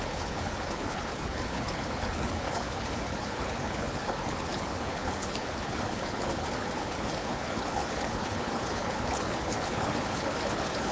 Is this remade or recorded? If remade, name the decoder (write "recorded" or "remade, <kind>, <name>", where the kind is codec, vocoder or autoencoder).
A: remade, codec, HILCodec